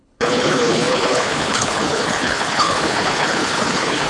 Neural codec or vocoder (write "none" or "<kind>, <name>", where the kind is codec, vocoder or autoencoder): codec, HILCodec